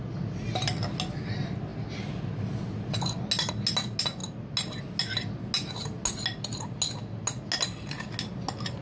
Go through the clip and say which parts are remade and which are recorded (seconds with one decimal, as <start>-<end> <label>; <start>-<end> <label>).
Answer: 0.0-8.8 recorded